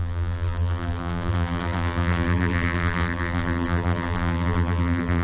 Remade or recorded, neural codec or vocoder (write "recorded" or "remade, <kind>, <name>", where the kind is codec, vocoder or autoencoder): remade, vocoder, BigVGAN v2